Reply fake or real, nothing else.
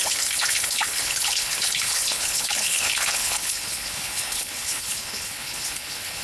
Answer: fake